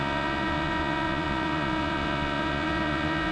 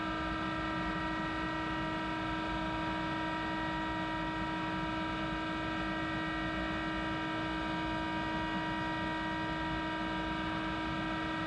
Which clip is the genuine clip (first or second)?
second